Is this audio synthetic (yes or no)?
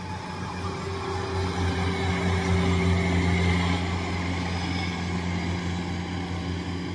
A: no